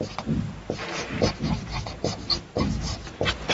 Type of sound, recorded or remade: recorded